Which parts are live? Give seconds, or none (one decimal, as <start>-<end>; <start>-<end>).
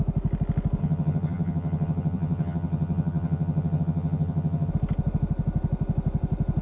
0.0-0.8; 4.7-6.6